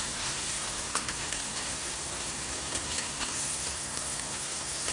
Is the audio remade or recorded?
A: remade